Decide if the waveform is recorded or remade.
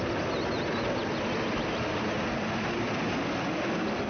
recorded